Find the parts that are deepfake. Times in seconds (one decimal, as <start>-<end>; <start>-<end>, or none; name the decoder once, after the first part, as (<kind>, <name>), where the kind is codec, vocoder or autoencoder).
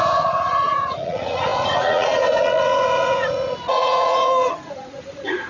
0.0-5.5 (vocoder, Vocos)